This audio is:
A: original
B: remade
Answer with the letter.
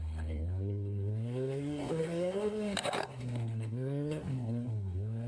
B